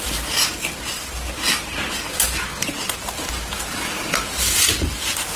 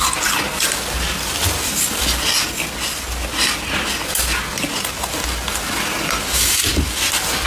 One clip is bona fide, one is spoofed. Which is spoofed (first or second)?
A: first